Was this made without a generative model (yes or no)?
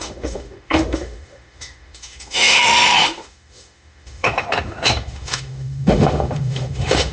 no